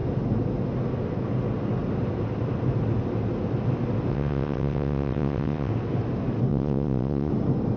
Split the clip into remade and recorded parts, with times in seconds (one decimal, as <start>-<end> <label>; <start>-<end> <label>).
0.0-4.1 recorded; 4.1-5.7 remade; 5.7-6.5 recorded; 6.5-7.3 remade; 7.3-7.8 recorded